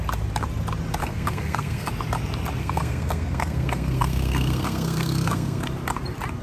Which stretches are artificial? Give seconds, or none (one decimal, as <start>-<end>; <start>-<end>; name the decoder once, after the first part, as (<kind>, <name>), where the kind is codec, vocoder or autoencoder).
1.0-1.9 (codec, SNAC); 2.6-5.7